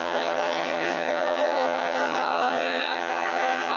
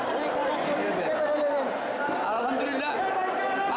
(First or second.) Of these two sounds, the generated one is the first